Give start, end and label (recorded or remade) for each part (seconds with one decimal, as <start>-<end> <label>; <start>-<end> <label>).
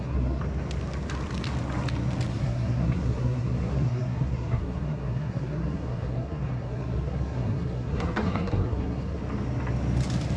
0.0-0.4 remade; 0.4-2.3 recorded; 2.3-9.2 remade; 9.2-10.4 recorded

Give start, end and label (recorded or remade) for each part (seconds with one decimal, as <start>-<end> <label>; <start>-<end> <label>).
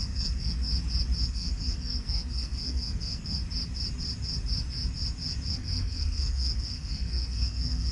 0.0-0.7 remade; 0.7-1.3 recorded; 1.3-3.4 remade; 3.4-5.5 recorded; 5.5-7.9 remade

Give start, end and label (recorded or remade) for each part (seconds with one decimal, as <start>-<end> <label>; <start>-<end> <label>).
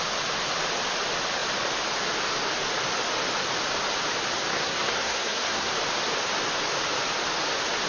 0.0-4.5 recorded; 4.5-5.7 remade; 5.7-7.9 recorded